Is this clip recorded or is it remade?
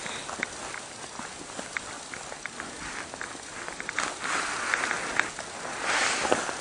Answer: recorded